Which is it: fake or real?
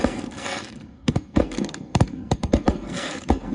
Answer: fake